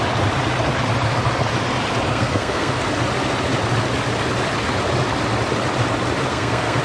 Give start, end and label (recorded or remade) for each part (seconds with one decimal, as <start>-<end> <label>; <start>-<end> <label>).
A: 0.0-2.1 recorded; 2.1-2.8 remade; 2.8-6.3 recorded; 6.3-6.8 remade